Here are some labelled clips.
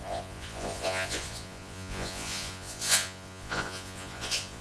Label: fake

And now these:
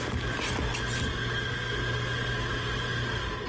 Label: real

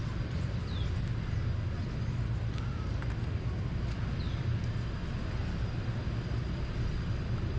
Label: real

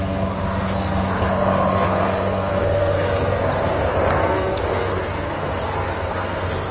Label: fake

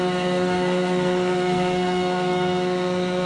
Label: fake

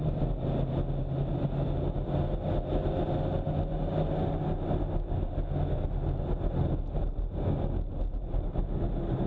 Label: real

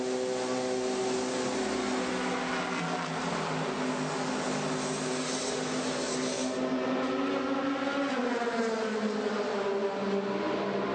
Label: real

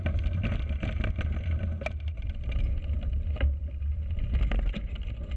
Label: real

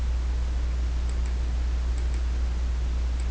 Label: real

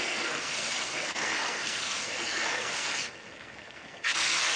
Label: fake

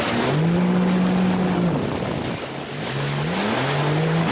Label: real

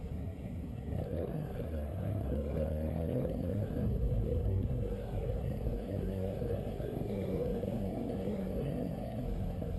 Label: fake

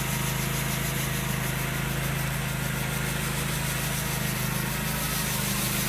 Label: real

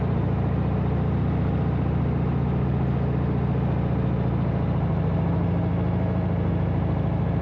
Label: real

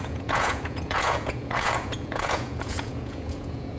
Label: fake